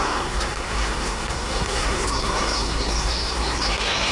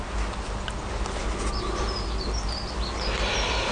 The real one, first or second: second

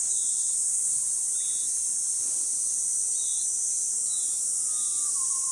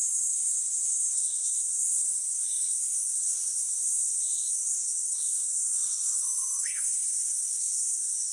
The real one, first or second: first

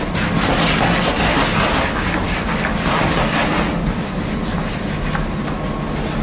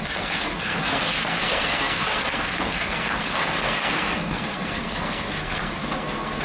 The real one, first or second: first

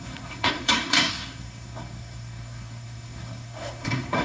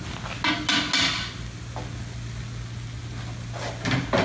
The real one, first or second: second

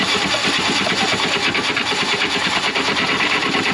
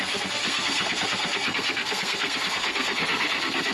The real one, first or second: first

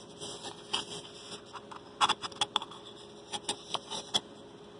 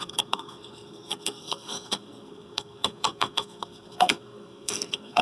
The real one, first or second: first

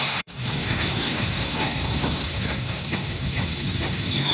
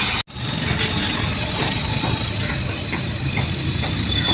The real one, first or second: second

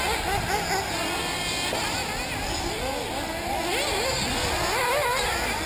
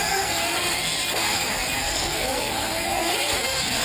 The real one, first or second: first